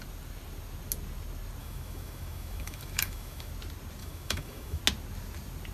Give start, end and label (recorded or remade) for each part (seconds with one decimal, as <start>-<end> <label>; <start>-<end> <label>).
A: 0.0-1.6 recorded; 1.6-3.5 remade; 3.5-4.0 recorded; 4.0-4.8 remade; 4.8-5.7 recorded